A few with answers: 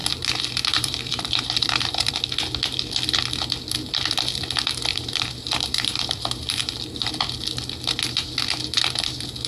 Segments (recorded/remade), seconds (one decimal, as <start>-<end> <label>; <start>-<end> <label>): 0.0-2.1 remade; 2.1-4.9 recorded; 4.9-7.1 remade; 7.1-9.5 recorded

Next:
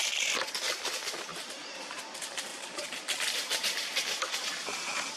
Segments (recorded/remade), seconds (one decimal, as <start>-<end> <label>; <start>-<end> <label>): 0.0-1.3 recorded; 1.3-2.0 remade; 2.0-2.5 recorded; 2.5-4.2 remade; 4.2-5.2 recorded

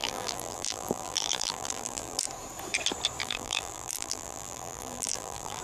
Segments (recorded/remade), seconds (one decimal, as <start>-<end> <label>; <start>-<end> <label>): 0.0-2.2 remade; 2.2-3.2 recorded; 3.2-5.6 remade